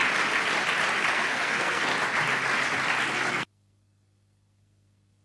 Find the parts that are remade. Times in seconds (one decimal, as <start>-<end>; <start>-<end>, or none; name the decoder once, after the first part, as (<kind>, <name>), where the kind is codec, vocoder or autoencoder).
1.1-1.9 (codec, SNAC); 3.3-5.2